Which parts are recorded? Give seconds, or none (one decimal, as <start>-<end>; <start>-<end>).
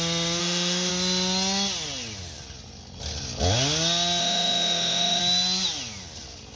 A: 0.0-0.4; 0.9-4.2; 5.2-6.6